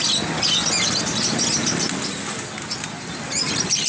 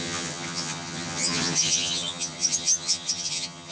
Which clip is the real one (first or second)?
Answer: first